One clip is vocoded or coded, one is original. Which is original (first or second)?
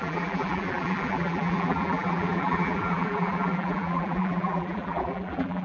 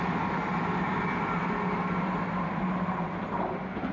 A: second